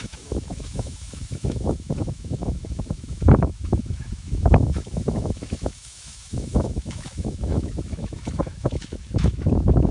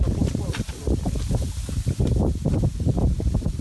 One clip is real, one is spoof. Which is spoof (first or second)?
first